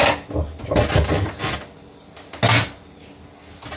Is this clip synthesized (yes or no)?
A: no